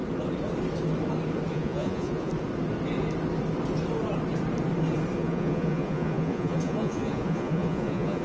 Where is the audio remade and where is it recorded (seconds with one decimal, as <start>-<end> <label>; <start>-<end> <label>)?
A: 0.0-1.5 recorded; 1.5-2.3 remade; 2.3-5.2 recorded; 5.2-8.2 remade